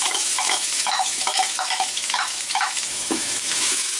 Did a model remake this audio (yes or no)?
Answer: yes